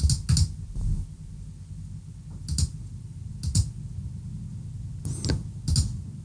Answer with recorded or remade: recorded